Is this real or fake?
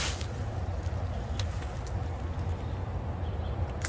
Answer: real